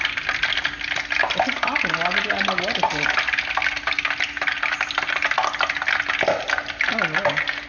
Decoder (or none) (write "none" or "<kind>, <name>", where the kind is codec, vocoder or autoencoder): none